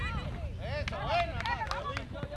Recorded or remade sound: recorded